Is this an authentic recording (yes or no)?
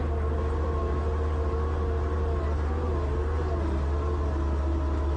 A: yes